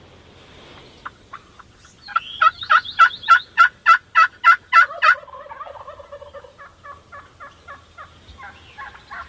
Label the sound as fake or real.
real